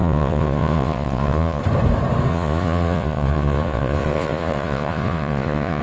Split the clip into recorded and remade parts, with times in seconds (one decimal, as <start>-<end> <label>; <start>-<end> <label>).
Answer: 0.0-1.6 remade; 1.6-2.3 recorded; 2.3-5.8 remade